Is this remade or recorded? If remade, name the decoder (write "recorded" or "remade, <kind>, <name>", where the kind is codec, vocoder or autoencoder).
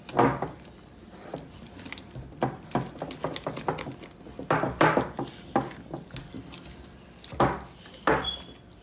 recorded